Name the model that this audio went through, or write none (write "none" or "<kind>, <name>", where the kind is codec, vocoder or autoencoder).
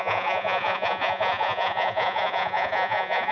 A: vocoder, Vocos